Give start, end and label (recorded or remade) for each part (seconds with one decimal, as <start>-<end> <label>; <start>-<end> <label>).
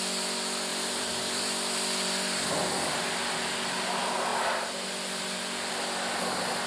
0.0-0.7 recorded; 0.7-2.5 remade; 2.5-4.3 recorded; 4.3-5.7 remade; 5.7-6.7 recorded